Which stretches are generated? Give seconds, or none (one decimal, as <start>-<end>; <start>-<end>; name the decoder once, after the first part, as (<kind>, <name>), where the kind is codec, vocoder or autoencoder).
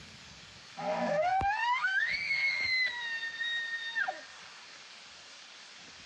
0.0-2.7 (codec, DAC); 4.1-6.1